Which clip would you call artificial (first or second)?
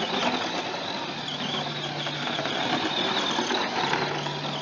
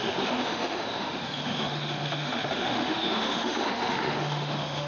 second